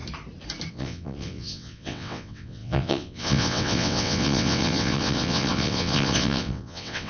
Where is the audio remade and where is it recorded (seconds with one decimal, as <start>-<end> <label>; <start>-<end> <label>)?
0.0-0.7 recorded; 0.7-7.1 remade